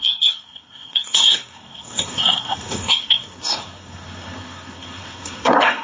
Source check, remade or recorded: remade